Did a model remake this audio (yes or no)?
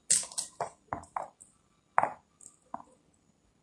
no